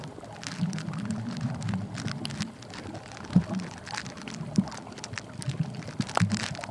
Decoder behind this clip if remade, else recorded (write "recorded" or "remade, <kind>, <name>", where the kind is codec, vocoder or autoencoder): remade, vocoder, BigVGAN v2